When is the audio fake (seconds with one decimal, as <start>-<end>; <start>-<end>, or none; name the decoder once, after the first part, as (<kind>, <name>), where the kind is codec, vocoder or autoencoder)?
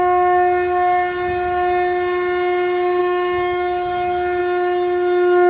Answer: 3.0-4.4 (autoencoder, DAC-VAE)